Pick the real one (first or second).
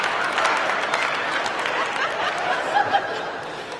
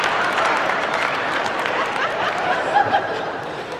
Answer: first